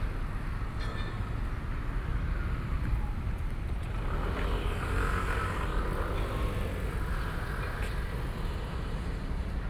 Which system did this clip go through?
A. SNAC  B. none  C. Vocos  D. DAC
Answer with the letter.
B